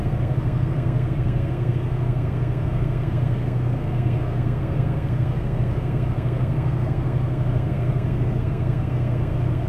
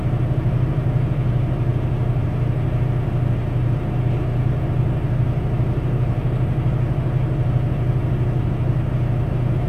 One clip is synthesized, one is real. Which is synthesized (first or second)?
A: first